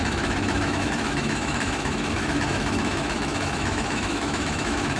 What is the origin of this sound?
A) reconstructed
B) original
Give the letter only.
A